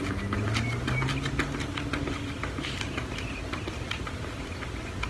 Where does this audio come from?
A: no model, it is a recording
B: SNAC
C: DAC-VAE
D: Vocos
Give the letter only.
A